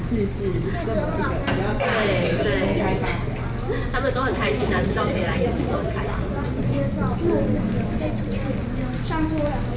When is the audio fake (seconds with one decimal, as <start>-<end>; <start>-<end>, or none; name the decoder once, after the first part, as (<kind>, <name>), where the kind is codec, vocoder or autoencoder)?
4.3-6.6 (vocoder, Vocos)